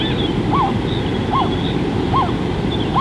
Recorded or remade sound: recorded